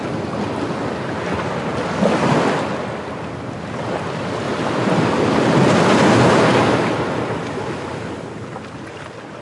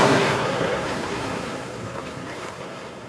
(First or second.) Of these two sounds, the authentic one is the first